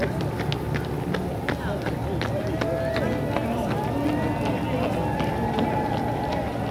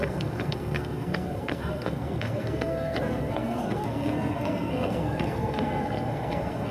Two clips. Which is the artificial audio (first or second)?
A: second